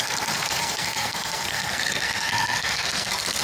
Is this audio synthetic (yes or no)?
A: yes